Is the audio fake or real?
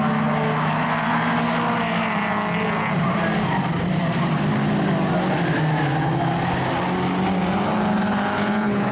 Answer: real